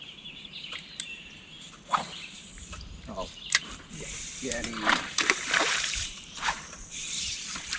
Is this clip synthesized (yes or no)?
yes